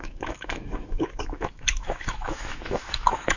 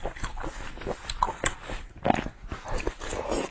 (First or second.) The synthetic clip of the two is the first